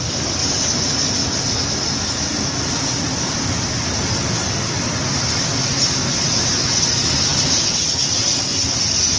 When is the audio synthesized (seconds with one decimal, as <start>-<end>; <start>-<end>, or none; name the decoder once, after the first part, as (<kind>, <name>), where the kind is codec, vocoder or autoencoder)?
none